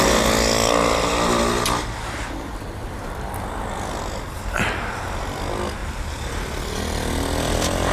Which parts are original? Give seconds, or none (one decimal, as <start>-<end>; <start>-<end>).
0.0-2.8; 4.0-5.8; 6.8-7.9